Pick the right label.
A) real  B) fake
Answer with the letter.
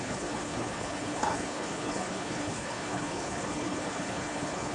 B